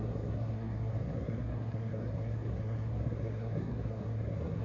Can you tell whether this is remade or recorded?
remade